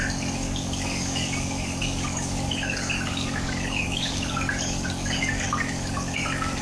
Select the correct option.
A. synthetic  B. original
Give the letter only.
A